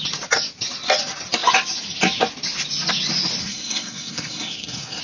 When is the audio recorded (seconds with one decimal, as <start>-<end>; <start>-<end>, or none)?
0.0-3.4

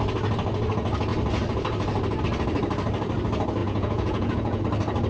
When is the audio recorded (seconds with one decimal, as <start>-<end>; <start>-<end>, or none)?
0.0-3.6; 4.6-5.1

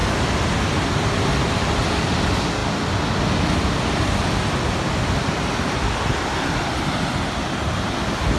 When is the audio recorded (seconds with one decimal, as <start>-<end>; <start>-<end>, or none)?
0.0-8.4

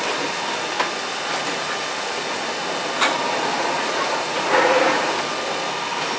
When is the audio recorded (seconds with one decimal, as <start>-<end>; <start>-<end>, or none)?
0.0-3.5; 5.1-6.2

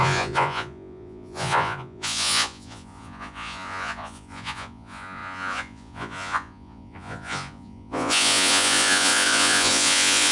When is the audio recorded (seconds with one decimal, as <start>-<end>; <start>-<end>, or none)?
none

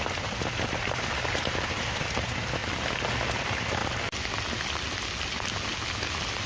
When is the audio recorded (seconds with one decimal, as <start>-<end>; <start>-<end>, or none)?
2.6-3.3; 3.8-6.5

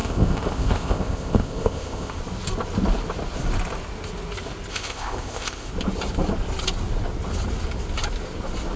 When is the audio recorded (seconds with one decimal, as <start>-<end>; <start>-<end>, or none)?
2.2-4.7; 5.7-8.8